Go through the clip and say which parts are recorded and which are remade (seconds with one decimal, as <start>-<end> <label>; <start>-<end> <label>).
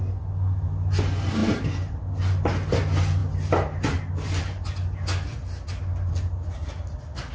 0.0-1.4 recorded; 1.4-2.0 remade; 2.0-7.3 recorded